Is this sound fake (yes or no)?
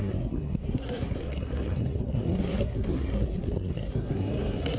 yes